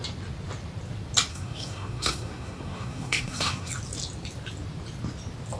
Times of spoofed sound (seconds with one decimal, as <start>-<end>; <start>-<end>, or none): 1.3-3.7